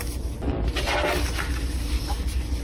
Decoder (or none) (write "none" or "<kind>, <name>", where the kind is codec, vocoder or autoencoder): none